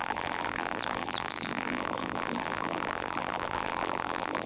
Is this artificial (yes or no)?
yes